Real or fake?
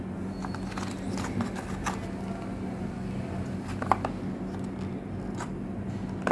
real